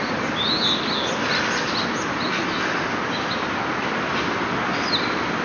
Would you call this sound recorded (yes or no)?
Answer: yes